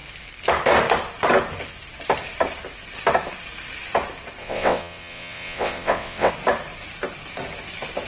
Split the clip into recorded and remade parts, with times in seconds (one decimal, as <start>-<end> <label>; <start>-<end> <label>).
0.0-4.4 recorded; 4.4-6.3 remade; 6.3-8.1 recorded